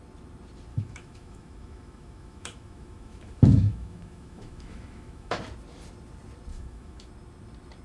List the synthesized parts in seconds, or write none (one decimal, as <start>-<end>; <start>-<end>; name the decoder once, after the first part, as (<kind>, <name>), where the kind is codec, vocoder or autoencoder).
0.7-5.4 (autoencoder, DAC-VAE); 6.5-7.1